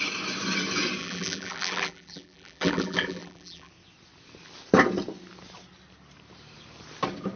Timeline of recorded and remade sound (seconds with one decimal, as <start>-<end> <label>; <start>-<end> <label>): 0.0-1.0 recorded; 1.0-3.7 remade; 3.7-7.4 recorded